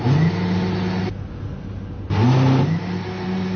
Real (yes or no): yes